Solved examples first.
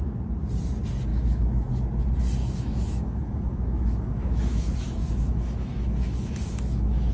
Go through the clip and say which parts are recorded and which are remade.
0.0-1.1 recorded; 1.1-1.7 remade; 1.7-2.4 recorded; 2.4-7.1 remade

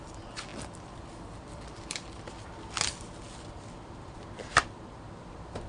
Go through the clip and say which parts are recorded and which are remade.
0.0-5.7 recorded